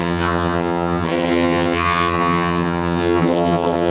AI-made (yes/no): yes